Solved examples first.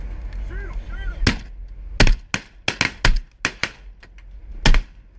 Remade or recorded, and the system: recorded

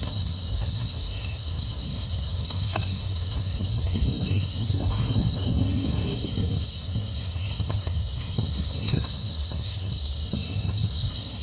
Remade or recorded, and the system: remade, codec, SNAC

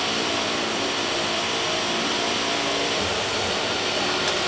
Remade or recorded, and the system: remade, vocoder, BigVGAN v2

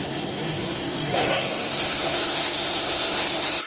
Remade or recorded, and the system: remade, codec, SNAC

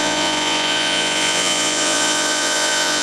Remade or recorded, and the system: remade, vocoder, Vocos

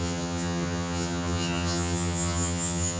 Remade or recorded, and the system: remade, vocoder, HiFi-GAN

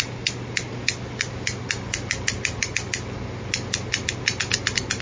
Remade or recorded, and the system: recorded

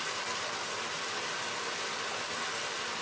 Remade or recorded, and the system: recorded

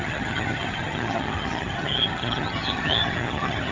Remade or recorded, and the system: remade, vocoder, HiFi-GAN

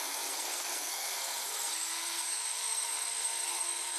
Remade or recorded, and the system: remade, codec, SNAC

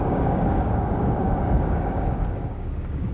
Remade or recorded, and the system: remade, codec, DAC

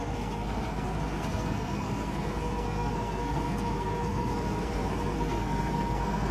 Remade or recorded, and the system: remade, codec, SNAC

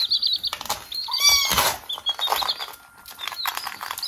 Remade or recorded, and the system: recorded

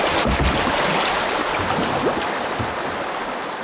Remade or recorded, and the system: recorded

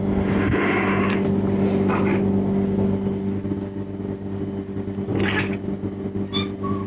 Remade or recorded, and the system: recorded